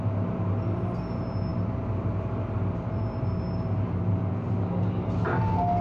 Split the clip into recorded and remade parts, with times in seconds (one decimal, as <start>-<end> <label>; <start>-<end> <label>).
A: 0.0-1.5 recorded; 1.5-3.4 remade; 3.4-5.8 recorded